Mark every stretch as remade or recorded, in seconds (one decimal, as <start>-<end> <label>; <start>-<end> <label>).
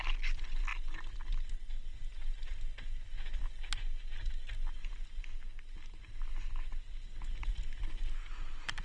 0.0-8.8 recorded